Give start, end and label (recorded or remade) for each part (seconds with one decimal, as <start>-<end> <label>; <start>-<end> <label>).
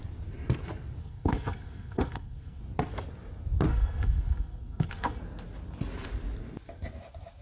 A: 0.0-1.0 recorded; 1.0-2.6 remade; 2.6-3.7 recorded; 3.7-5.2 remade; 5.2-7.4 recorded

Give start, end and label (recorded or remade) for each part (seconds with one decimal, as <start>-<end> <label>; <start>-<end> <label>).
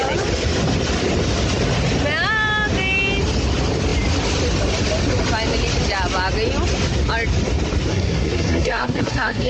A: 0.0-7.9 recorded; 7.9-9.5 remade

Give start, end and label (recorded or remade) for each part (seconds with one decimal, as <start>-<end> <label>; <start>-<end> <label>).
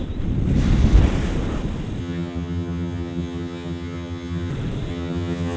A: 0.0-2.0 recorded; 2.0-4.5 remade; 4.5-4.9 recorded; 4.9-5.6 remade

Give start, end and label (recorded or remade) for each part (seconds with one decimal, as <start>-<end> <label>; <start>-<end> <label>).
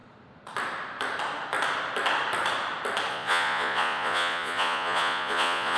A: 0.0-3.1 recorded; 3.1-5.8 remade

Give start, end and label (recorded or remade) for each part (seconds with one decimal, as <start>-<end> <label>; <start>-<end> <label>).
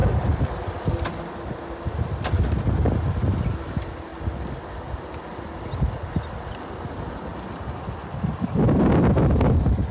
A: 0.0-2.4 remade; 2.4-7.3 recorded; 7.3-7.9 remade; 7.9-9.9 recorded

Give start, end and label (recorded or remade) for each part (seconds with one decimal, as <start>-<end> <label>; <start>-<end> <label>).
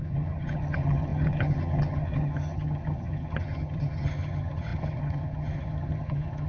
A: 0.0-6.5 remade